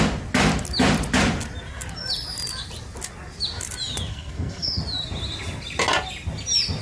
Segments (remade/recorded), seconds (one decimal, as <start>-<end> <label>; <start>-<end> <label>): 0.0-4.1 recorded; 4.1-4.8 remade; 4.8-6.8 recorded